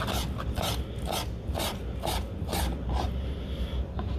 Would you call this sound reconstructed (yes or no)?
no